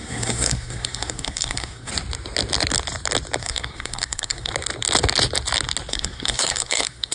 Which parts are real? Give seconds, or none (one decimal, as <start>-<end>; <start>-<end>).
1.9-3.4; 4.5-5.9